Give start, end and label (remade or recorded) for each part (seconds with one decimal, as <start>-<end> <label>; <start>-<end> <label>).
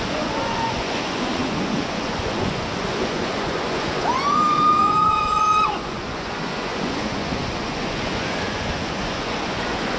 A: 0.0-10.0 remade